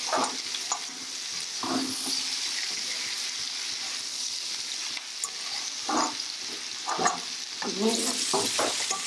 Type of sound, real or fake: real